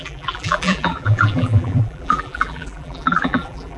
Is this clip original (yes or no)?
no